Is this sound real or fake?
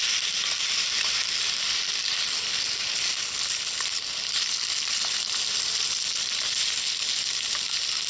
real